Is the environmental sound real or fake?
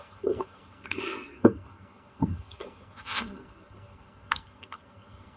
fake